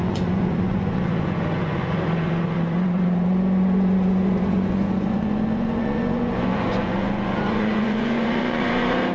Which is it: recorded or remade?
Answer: remade